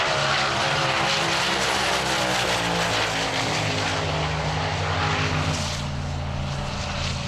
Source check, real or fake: real